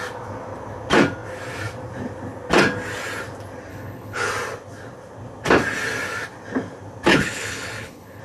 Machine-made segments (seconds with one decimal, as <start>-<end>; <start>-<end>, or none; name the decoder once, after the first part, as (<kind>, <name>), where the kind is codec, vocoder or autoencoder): 3.7-4.3 (codec, HILCodec); 7.1-8.2